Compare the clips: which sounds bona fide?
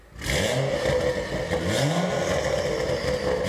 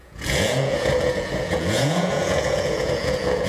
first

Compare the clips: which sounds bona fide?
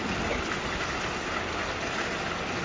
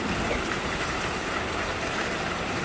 first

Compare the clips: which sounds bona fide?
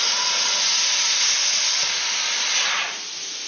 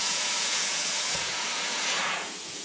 first